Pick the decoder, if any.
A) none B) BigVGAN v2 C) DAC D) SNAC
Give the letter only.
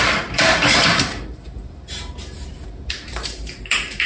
B